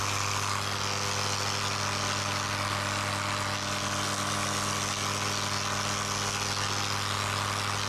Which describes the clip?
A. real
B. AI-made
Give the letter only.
A